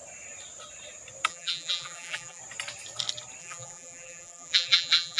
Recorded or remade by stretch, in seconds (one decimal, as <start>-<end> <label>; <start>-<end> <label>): 0.0-1.3 recorded; 1.3-2.4 remade; 2.4-3.4 recorded; 3.4-5.2 remade

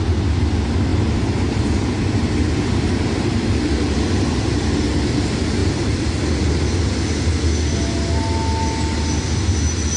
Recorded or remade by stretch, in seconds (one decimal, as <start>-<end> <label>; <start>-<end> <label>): 0.0-0.9 recorded; 0.9-3.2 remade; 3.2-10.0 recorded

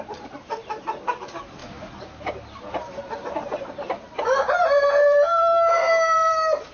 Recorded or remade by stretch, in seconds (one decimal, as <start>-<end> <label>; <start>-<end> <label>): 0.0-1.6 remade; 1.6-2.4 recorded; 2.4-6.7 remade